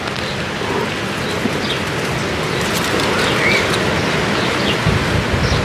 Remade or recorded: recorded